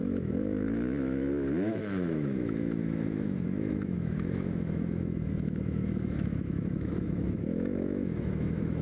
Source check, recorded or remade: remade